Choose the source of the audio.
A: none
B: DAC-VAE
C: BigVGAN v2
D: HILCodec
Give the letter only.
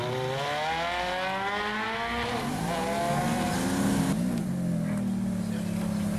A